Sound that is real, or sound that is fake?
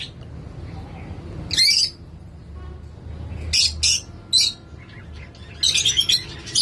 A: real